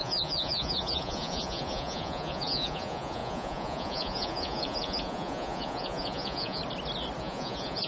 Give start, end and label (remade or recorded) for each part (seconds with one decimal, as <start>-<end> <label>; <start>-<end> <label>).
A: 0.0-6.6 remade; 6.6-7.2 recorded; 7.2-7.9 remade